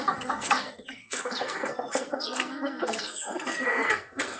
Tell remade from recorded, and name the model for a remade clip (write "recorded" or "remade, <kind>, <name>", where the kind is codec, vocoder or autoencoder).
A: remade, codec, SNAC